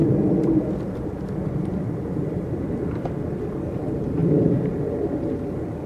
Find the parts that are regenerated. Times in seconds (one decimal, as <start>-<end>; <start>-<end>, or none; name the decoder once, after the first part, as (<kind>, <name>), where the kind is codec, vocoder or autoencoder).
none